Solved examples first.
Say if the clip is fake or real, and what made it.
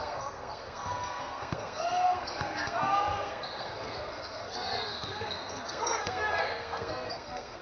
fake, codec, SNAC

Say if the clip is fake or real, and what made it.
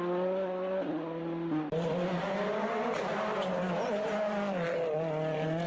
real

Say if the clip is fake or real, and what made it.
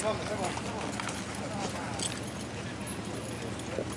real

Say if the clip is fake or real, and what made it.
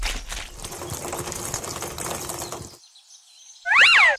real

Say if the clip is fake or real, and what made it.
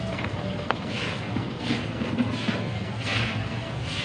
fake, codec, SNAC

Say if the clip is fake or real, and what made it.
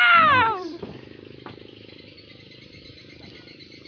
real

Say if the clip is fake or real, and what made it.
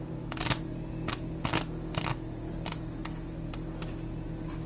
real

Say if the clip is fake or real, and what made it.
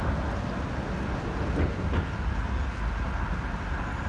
real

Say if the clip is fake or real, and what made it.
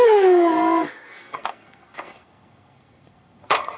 fake, codec, SNAC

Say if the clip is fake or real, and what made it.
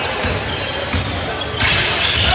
real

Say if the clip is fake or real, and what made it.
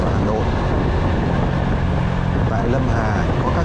real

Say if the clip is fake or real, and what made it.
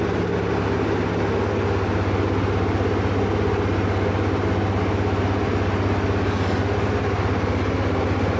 real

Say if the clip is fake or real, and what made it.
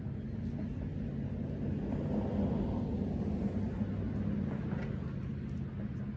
real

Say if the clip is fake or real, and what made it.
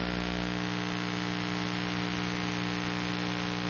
real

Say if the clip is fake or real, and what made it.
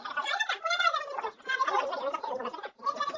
real